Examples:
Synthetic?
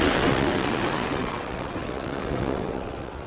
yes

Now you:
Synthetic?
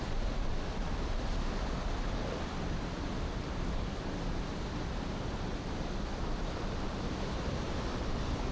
no